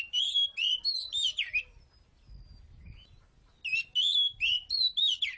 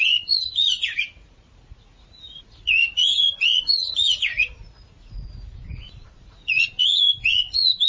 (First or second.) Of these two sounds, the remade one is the second